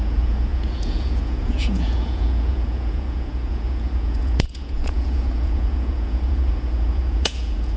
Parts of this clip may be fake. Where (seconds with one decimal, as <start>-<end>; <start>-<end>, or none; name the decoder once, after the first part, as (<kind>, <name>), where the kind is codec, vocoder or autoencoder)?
0.0-7.8 (vocoder, Vocos)